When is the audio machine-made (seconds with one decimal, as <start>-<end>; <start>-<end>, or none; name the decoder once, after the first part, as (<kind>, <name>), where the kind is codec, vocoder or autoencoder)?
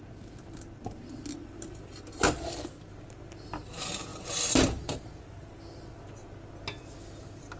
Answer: 4.1-5.6 (vocoder, BigVGAN v2)